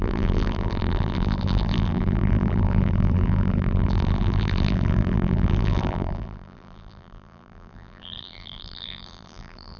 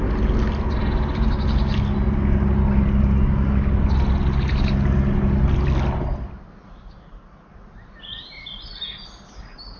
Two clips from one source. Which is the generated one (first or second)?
first